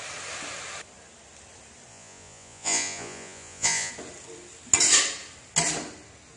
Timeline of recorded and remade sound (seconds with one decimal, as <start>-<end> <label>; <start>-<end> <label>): 0.0-1.9 recorded; 1.9-3.9 remade; 3.9-6.4 recorded